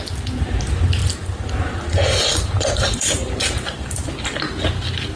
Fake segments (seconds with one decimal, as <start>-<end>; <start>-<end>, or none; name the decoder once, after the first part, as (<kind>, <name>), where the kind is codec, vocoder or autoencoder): 1.0-4.1 (vocoder, BigVGAN v2)